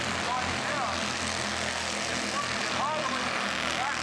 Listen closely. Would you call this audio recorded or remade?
recorded